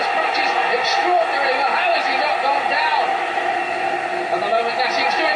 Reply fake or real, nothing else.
real